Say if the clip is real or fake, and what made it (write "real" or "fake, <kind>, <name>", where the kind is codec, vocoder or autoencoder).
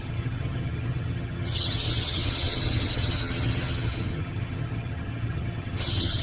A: fake, vocoder, HiFi-GAN